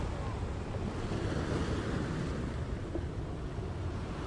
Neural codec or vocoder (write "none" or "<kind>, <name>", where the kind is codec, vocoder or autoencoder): none